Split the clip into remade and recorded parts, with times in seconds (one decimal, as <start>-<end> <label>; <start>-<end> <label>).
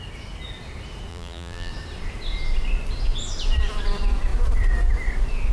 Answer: 0.0-1.1 recorded; 1.1-1.7 remade; 1.7-5.5 recorded